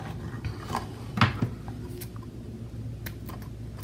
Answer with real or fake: real